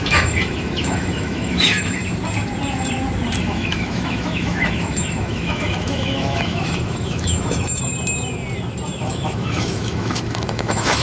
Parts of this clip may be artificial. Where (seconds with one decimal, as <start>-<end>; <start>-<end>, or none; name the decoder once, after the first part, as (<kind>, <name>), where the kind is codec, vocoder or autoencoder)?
0.0-2.0 (autoencoder, DAC-VAE); 3.4-7.8; 9.0-11.0

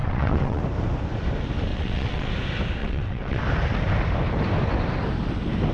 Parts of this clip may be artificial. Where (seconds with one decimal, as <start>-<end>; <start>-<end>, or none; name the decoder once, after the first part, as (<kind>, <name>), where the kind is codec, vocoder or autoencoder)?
0.0-0.6 (vocoder, WaveNeXt); 1.7-2.3; 2.8-3.4

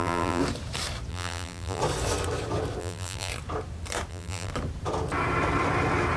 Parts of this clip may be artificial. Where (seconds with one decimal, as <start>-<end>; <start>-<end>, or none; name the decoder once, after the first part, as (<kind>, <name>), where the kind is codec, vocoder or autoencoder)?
0.0-0.4 (vocoder, BigVGAN v2); 1.1-1.8; 2.8-3.3; 4.1-4.5

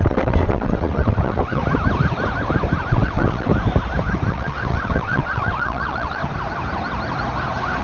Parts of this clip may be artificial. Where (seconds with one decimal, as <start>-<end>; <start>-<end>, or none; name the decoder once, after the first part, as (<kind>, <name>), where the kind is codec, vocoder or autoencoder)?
0.0-1.6 (vocoder, WaveNeXt); 2.9-3.5; 4.3-6.2